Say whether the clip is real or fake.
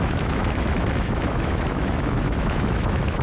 fake